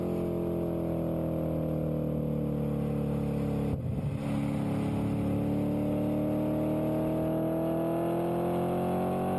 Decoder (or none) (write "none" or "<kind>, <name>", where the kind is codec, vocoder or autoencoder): none